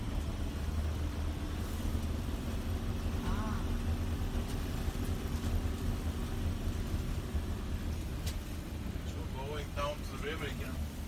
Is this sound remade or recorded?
recorded